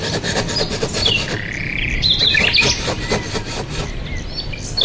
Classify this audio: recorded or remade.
recorded